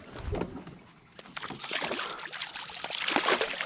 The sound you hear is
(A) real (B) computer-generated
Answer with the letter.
A